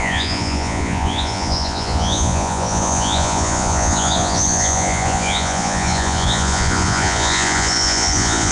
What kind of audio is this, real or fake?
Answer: fake